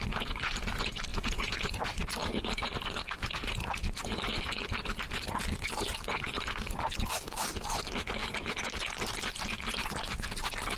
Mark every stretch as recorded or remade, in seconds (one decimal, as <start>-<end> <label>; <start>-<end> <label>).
0.0-1.1 recorded; 1.1-1.6 remade; 1.6-10.8 recorded